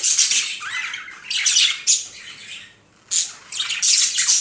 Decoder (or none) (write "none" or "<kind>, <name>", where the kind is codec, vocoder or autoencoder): none